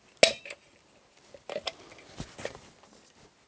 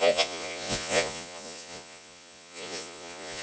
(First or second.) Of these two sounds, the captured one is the first